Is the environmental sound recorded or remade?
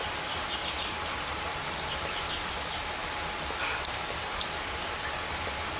remade